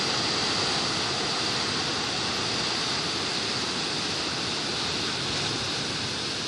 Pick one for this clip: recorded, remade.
recorded